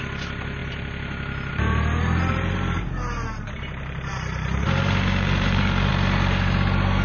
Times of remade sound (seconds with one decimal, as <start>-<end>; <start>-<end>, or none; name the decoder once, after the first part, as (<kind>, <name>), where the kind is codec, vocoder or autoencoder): 2.3-5.9 (vocoder, BigVGAN v2)